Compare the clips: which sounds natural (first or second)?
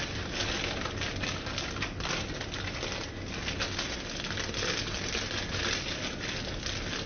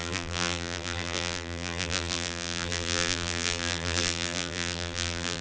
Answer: first